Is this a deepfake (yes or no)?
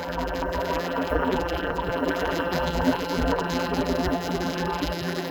yes